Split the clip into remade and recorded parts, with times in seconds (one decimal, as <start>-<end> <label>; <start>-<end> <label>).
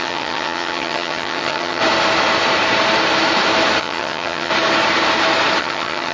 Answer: 0.0-1.8 remade; 1.8-3.8 recorded; 3.8-4.5 remade; 4.5-5.6 recorded; 5.6-6.1 remade